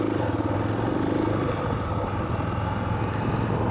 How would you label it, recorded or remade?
recorded